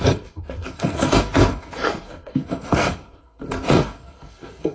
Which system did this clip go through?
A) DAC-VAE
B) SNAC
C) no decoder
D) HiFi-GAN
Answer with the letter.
B